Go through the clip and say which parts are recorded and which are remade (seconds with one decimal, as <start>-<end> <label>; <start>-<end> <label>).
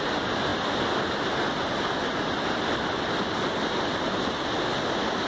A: 0.0-5.3 recorded